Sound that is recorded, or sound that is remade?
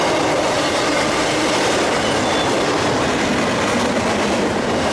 remade